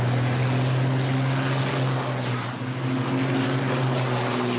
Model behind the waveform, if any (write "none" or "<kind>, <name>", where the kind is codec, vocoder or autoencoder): none